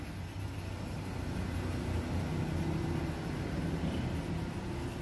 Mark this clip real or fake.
real